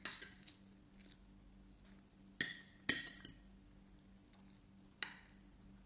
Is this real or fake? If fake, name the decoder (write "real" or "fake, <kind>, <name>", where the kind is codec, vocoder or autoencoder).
real